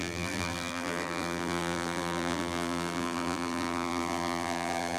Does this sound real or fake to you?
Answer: fake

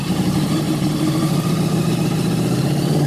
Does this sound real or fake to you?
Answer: fake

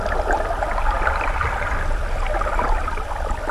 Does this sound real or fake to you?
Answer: real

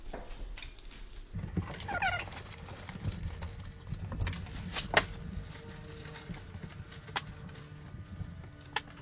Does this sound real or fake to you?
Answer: real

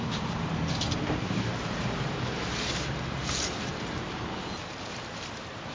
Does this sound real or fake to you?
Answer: fake